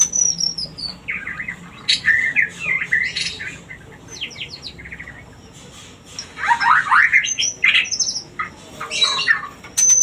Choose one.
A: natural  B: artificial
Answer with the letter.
A